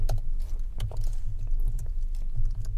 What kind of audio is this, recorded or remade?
recorded